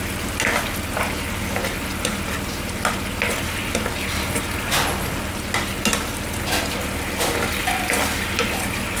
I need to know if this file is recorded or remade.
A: recorded